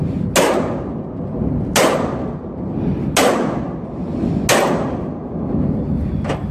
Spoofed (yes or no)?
no